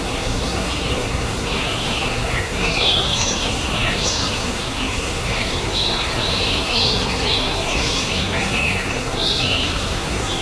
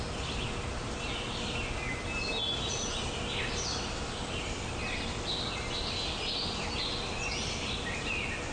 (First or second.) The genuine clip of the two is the second